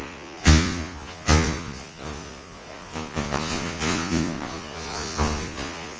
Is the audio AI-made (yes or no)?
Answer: yes